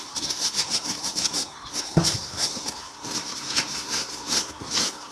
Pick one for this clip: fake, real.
fake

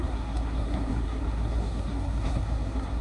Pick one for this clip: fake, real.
fake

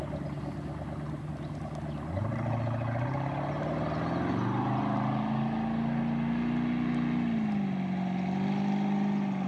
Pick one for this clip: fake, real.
real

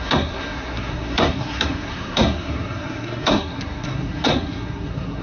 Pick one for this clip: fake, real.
fake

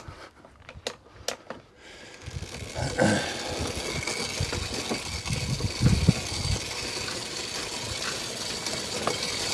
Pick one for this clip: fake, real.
real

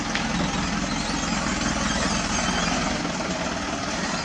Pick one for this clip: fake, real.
real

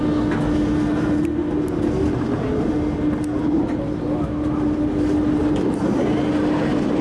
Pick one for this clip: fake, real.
real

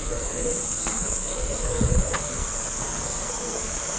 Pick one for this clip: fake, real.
fake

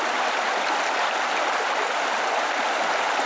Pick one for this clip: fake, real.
real